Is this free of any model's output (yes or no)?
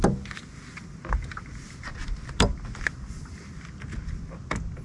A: yes